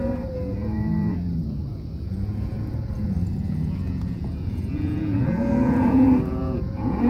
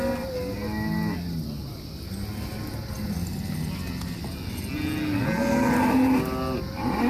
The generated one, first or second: first